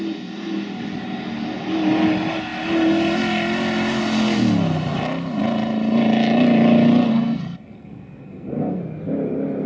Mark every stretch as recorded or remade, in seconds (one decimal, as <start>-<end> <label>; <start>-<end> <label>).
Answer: 0.0-7.1 recorded; 7.1-8.8 remade; 8.8-9.7 recorded